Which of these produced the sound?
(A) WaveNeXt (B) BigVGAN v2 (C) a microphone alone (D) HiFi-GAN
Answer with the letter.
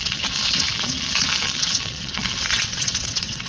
A